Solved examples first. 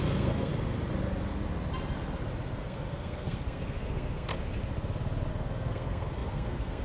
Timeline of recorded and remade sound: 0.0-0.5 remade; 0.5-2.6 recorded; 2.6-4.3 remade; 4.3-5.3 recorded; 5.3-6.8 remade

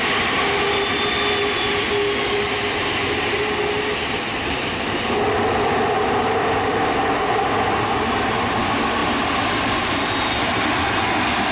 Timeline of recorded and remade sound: 0.0-11.5 recorded

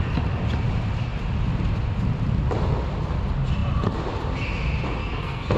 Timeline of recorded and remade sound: 0.0-5.0 recorded; 5.0-5.6 remade

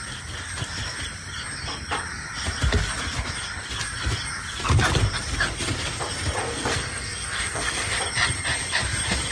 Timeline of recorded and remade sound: 0.0-6.4 recorded; 6.4-8.0 remade; 8.0-9.3 recorded

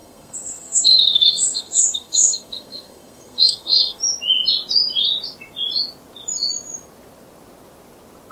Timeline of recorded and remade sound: 0.0-4.0 remade; 4.0-8.3 recorded

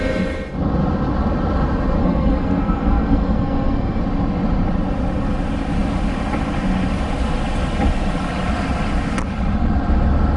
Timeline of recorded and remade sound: 0.0-2.0 recorded; 2.0-4.0 remade; 4.0-10.4 recorded

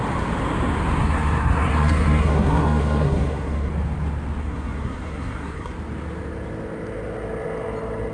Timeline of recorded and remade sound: 0.0-1.0 recorded; 1.0-3.7 remade; 3.7-4.4 recorded; 4.4-5.7 remade; 5.7-8.1 recorded